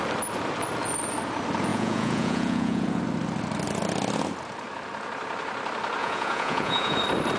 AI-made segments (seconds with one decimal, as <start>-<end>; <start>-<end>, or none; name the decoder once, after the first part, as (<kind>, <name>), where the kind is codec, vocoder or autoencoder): 1.7-3.0 (vocoder, Vocos); 6.0-7.0